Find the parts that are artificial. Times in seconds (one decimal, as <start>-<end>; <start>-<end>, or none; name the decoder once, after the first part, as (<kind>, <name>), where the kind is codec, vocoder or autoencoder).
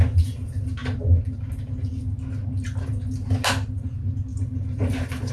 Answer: 4.3-5.3 (vocoder, BigVGAN v2)